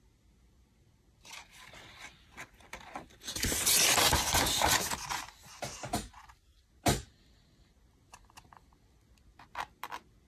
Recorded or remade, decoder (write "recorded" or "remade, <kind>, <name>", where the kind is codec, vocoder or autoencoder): recorded